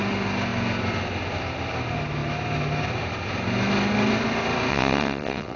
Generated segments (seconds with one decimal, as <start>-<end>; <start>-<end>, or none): 4.7-5.6